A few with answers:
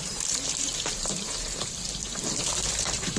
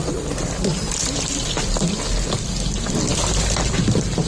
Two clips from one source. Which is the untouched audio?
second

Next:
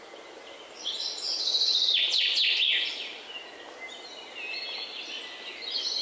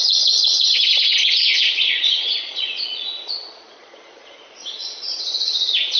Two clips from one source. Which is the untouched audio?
first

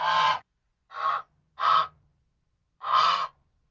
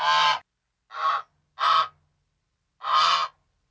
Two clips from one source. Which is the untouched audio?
second